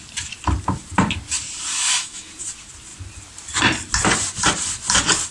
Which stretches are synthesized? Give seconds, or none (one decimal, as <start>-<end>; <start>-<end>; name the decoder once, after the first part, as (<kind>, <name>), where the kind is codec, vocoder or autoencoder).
1.7-2.3 (autoencoder, DAC-VAE)